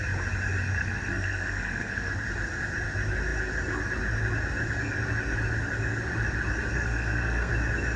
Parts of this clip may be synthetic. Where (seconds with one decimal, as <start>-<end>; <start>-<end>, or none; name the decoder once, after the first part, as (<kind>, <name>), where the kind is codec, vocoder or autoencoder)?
0.8-2.1 (codec, SNAC); 6.7-7.5